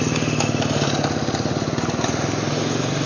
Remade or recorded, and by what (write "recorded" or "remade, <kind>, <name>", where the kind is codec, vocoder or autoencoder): recorded